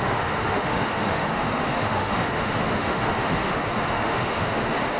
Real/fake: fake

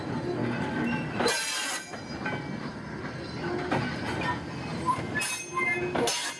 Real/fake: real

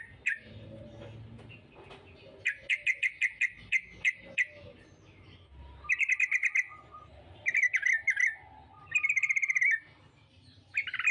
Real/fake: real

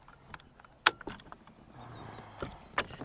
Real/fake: real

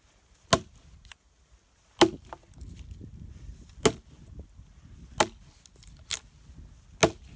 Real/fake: real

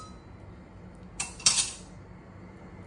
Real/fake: real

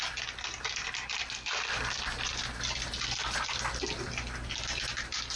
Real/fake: real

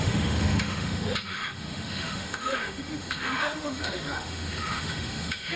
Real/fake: fake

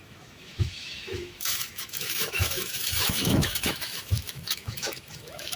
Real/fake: fake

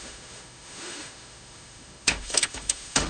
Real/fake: fake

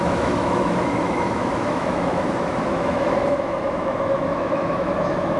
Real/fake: fake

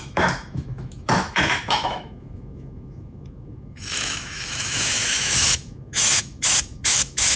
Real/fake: fake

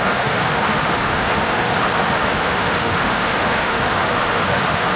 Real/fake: fake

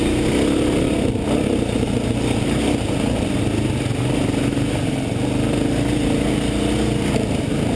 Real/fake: real